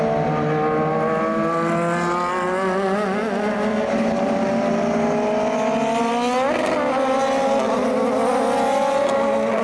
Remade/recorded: recorded